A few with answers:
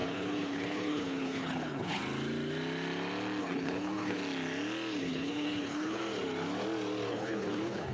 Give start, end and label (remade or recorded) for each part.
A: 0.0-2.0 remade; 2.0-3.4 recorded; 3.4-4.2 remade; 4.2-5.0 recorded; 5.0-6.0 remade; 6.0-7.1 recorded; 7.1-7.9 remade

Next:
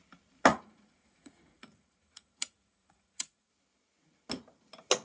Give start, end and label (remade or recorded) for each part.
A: 0.0-0.5 recorded; 0.5-3.5 remade; 3.5-5.0 recorded

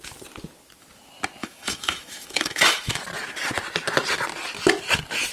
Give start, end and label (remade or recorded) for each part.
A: 0.0-1.4 recorded; 1.4-3.0 remade; 3.0-5.3 recorded